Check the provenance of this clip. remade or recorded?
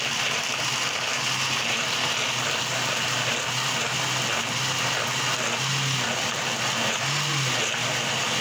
recorded